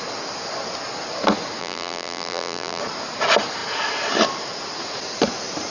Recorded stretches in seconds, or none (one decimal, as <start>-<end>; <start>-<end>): 0.0-1.6; 2.8-5.7